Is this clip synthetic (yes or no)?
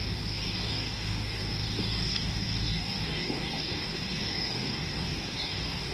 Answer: yes